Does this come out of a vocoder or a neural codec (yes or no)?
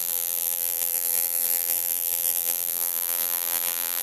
yes